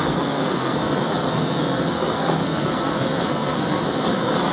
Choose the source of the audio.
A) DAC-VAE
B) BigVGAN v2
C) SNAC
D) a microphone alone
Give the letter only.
C